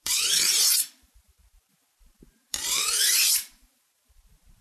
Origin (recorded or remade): remade